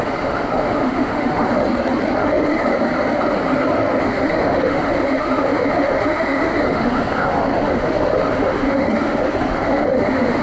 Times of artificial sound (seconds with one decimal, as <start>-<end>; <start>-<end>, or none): 0.0-1.6; 2.1-2.6; 4.0-10.4